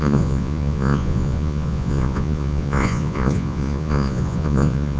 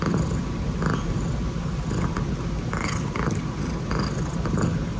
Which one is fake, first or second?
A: first